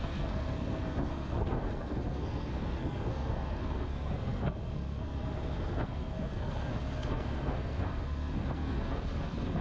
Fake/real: fake